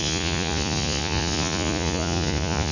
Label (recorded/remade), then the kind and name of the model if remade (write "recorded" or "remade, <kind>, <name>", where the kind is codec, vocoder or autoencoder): remade, vocoder, Vocos